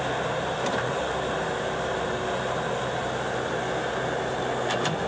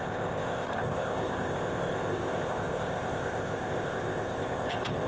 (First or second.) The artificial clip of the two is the second